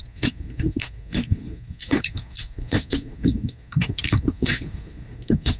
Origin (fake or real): fake